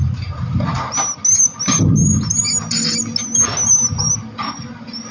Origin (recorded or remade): recorded